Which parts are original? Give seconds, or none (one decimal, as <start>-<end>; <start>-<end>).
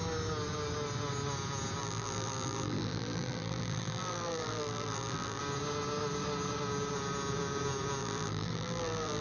0.0-1.8; 5.4-8.0